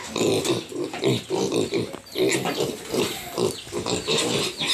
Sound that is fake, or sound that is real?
real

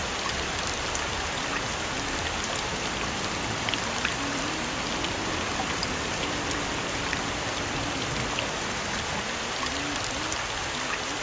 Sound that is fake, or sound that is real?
fake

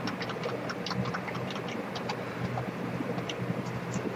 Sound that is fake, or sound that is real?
real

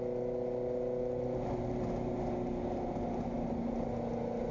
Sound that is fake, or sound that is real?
real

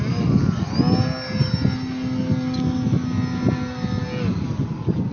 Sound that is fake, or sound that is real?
real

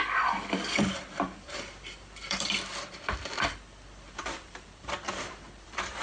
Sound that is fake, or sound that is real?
fake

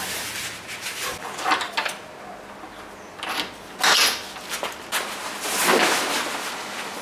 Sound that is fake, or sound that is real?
real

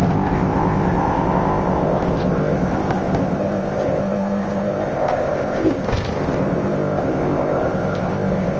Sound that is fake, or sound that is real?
fake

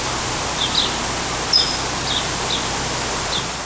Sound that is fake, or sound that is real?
real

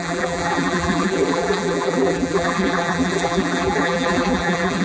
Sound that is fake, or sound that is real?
fake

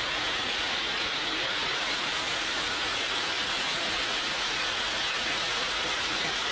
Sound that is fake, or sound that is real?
fake